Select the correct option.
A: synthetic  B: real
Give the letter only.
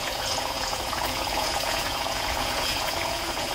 A